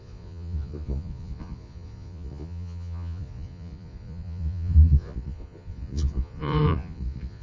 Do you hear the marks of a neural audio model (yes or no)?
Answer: yes